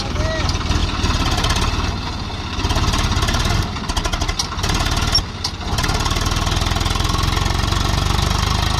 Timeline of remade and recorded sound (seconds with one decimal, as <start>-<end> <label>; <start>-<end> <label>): 0.0-8.8 recorded